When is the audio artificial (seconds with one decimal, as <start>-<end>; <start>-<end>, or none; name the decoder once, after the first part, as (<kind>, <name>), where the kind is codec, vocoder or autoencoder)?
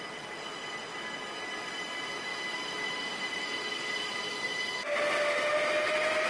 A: none